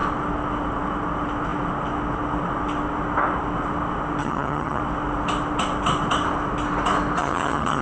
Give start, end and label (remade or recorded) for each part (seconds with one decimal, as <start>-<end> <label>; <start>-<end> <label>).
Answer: 0.0-4.2 recorded; 4.2-4.8 remade; 4.8-7.2 recorded; 7.2-7.8 remade